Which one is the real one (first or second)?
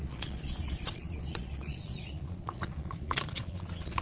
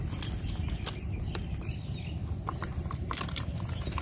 second